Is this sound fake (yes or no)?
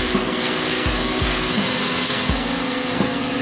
yes